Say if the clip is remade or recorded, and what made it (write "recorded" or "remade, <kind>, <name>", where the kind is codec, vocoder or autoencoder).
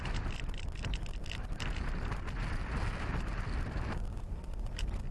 recorded